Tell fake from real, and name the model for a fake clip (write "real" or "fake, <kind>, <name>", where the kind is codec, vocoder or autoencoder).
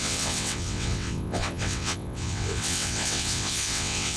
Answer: fake, vocoder, WaveNeXt